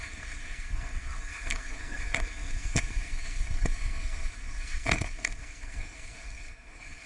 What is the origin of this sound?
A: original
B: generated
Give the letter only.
B